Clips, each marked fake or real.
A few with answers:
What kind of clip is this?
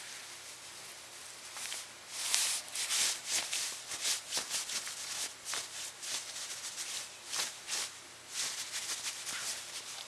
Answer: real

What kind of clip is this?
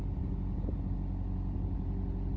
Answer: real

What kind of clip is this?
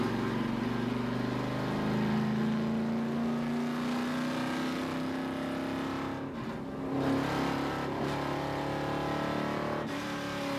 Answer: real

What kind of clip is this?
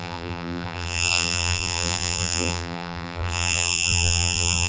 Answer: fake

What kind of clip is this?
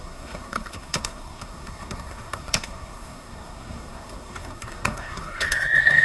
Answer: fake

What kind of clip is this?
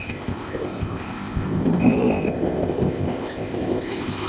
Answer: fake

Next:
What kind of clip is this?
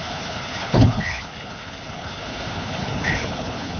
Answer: fake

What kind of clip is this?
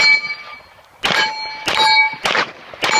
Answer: real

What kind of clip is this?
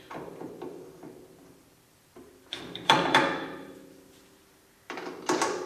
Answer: fake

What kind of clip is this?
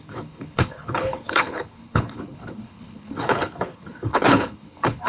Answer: fake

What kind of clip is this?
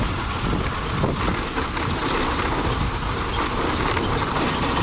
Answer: real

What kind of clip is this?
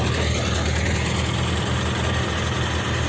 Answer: real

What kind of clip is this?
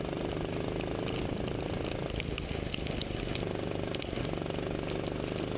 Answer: real